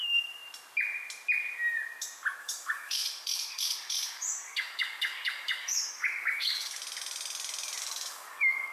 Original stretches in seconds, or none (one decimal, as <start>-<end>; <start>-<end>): 0.4-2.4; 6.8-7.8